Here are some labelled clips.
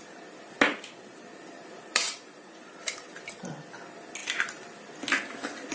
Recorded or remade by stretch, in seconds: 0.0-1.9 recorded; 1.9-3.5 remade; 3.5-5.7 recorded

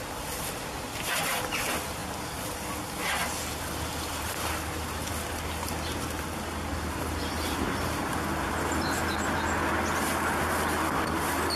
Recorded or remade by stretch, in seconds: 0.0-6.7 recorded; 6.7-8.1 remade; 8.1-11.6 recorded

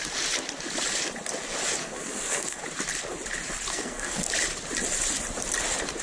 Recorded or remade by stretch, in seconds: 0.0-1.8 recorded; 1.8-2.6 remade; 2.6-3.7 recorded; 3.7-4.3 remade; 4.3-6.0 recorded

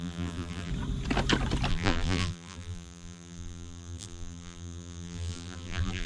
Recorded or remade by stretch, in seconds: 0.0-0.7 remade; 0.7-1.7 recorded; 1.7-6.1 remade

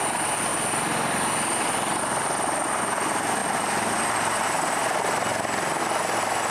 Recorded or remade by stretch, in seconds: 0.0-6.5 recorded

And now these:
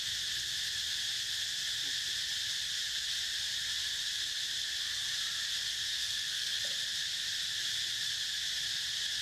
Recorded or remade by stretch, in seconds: 0.0-6.0 recorded; 6.0-6.6 remade; 6.6-9.2 recorded

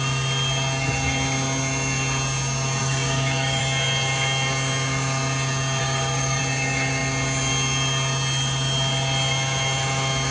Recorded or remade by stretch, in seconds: 0.0-2.8 recorded; 2.8-3.6 remade; 3.6-5.8 recorded; 5.8-6.4 remade; 6.4-10.3 recorded

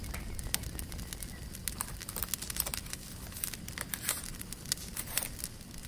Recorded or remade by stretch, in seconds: 0.0-5.9 recorded